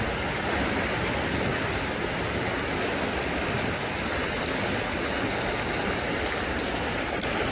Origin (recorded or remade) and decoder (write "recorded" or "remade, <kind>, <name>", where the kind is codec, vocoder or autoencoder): recorded